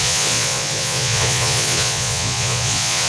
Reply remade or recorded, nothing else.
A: remade